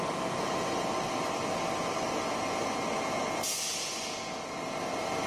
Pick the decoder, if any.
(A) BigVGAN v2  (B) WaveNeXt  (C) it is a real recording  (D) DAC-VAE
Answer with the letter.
A